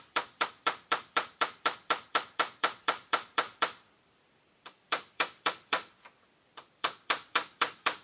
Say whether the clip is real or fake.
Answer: fake